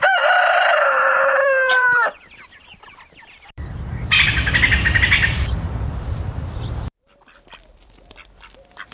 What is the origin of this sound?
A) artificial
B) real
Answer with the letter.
A